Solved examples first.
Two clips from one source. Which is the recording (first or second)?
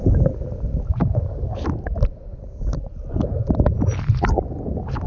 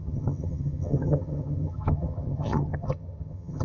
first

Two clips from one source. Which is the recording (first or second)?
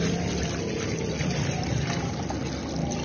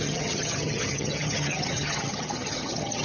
first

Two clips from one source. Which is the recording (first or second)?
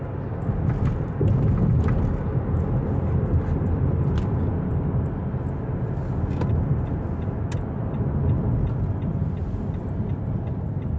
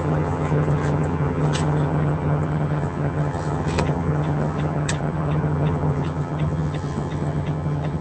first